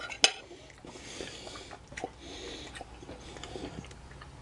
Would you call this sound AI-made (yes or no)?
no